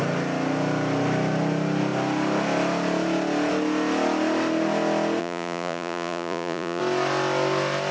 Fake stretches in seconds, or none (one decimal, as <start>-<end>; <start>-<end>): 5.2-6.8